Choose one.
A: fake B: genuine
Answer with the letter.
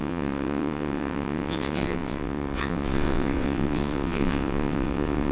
A